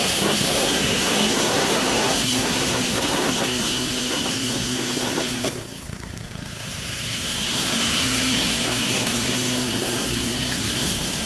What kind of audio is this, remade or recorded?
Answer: remade